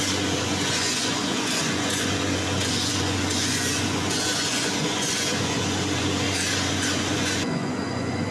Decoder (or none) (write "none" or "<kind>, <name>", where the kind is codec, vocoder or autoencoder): vocoder, Vocos